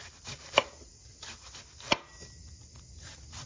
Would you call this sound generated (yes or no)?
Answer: no